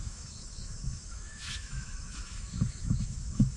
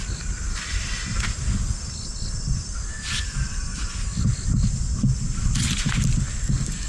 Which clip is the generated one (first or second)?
first